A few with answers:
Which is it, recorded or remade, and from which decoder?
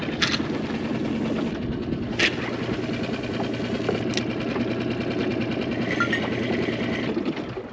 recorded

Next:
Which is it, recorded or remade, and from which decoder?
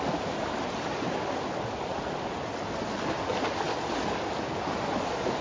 recorded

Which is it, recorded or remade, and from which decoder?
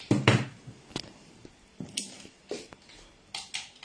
recorded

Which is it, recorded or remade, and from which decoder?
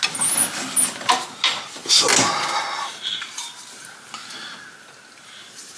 recorded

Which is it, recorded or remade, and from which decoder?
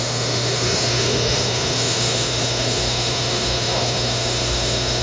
remade, autoencoder, DAC-VAE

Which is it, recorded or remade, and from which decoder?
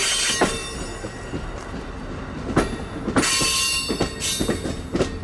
recorded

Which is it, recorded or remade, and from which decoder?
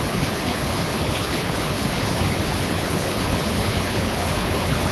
remade, codec, HILCodec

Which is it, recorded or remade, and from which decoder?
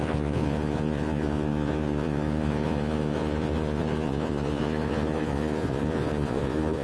remade, vocoder, Vocos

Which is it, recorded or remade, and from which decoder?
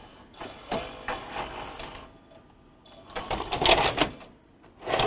recorded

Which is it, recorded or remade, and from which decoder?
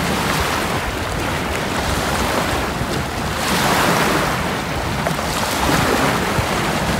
recorded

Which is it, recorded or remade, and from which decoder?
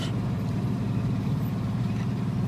remade, vocoder, BigVGAN v2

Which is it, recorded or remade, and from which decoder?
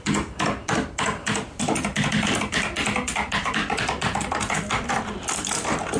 remade, vocoder, BigVGAN v2